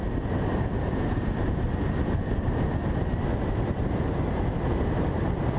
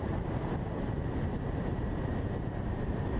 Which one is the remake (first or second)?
second